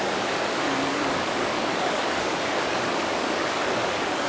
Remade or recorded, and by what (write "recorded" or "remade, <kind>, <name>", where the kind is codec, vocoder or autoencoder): remade, codec, DAC